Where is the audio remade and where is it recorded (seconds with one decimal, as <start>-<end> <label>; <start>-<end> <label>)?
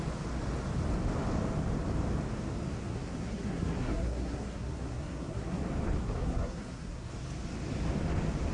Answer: 0.0-2.9 recorded; 2.9-5.6 remade; 5.6-6.0 recorded; 6.0-7.1 remade; 7.1-8.5 recorded